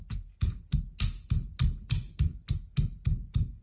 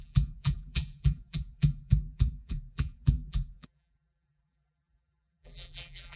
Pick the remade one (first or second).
second